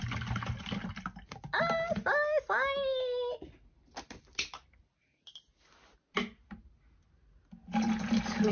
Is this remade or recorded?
recorded